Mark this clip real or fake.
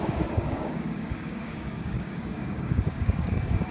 fake